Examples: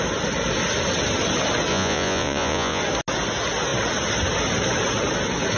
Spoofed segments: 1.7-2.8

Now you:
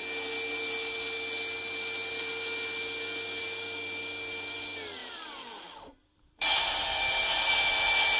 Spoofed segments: 5.0-7.0

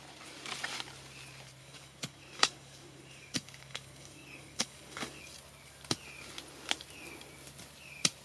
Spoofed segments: 1.6-5.2